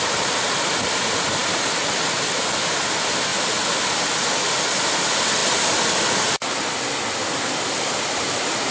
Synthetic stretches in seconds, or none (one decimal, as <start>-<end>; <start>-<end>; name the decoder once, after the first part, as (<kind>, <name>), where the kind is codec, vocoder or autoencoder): none